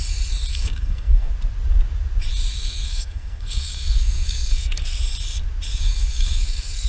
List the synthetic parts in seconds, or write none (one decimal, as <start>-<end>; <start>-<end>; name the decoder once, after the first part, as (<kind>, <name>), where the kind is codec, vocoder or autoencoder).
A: 0.5-1.3 (codec, SNAC); 2.5-5.0; 5.7-6.9